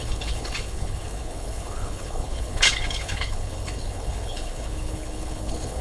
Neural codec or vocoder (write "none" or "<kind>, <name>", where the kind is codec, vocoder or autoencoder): codec, HILCodec